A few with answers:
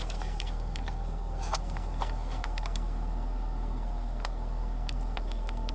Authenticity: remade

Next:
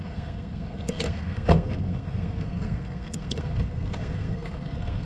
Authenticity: remade